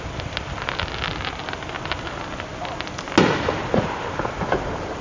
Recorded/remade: recorded